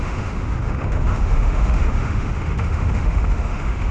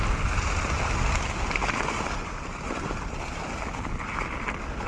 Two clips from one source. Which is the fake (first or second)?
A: first